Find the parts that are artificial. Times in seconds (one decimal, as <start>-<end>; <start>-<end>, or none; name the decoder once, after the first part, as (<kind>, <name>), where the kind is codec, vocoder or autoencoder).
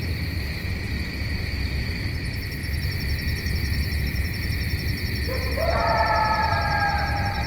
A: none